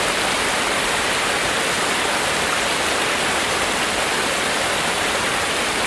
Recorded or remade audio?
recorded